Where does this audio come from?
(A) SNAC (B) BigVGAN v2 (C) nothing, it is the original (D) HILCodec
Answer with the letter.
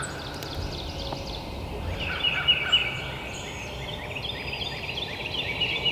C